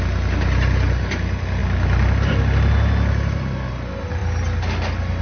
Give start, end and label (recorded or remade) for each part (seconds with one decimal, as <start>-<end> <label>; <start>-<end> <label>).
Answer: 0.0-5.2 recorded